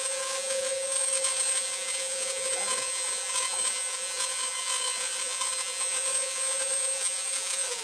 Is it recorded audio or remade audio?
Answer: remade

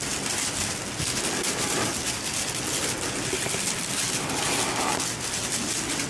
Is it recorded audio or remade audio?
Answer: recorded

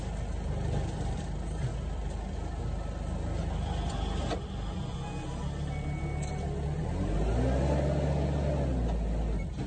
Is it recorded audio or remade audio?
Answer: recorded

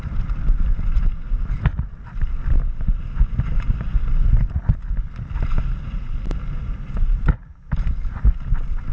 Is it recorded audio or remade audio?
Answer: recorded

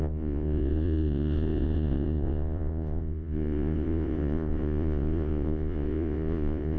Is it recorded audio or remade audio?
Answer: remade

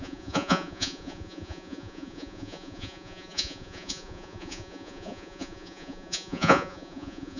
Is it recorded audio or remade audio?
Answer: remade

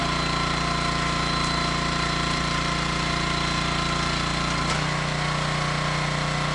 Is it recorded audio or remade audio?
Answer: recorded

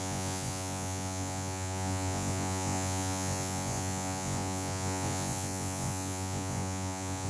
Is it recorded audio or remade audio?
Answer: remade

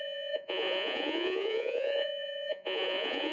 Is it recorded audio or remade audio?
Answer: remade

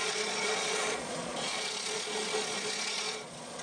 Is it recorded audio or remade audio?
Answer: remade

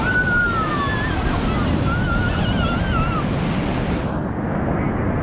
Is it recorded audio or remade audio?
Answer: recorded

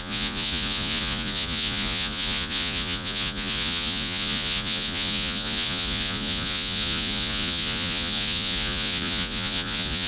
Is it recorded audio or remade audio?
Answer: remade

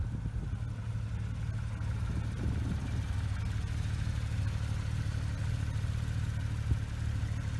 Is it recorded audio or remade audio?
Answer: recorded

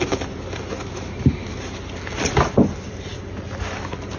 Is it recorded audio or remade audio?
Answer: recorded